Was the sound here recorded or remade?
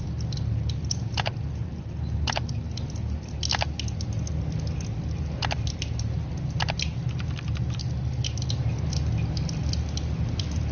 recorded